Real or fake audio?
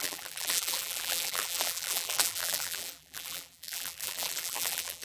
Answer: fake